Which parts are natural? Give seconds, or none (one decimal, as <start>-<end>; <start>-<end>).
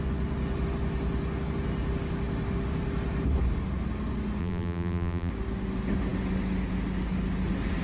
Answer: 0.0-4.4; 5.3-7.8